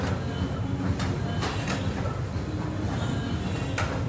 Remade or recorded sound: recorded